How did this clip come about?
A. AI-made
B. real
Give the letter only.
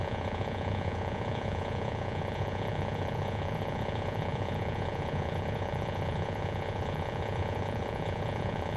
A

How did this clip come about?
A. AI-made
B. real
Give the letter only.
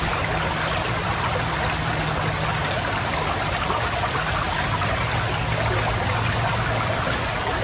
B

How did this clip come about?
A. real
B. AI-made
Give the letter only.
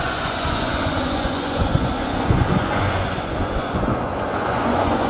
B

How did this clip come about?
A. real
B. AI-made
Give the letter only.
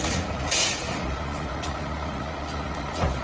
B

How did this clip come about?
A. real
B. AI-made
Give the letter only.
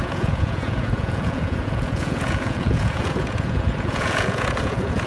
B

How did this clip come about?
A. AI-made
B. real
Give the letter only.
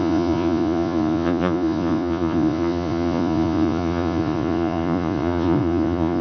A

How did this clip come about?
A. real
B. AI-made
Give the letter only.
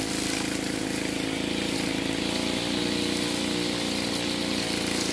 A